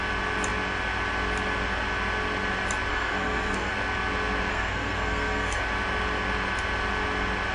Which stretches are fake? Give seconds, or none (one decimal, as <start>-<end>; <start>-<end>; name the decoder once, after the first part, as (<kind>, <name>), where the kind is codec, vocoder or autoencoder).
2.9-3.7 (codec, SNAC); 4.5-5.6